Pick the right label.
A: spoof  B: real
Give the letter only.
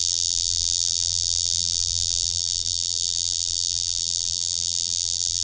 A